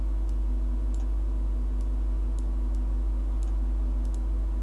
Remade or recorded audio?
recorded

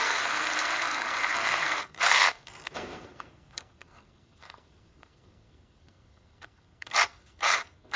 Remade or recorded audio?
remade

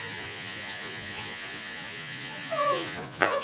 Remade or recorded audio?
remade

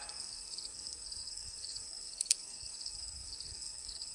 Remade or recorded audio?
remade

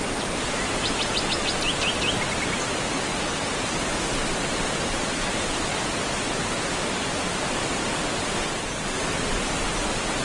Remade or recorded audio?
recorded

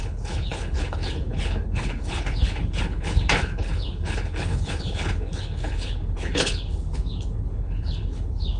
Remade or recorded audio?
remade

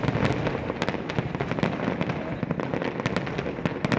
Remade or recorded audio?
recorded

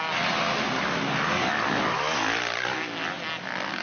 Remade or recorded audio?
recorded